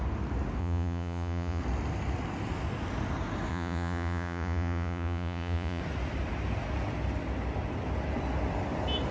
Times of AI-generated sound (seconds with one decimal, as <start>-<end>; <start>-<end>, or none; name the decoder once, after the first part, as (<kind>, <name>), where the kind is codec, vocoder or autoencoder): 0.6-1.6 (vocoder, Vocos); 3.5-5.8